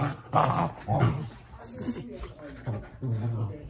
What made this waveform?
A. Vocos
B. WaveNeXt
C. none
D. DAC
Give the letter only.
C